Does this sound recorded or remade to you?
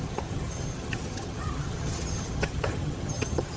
remade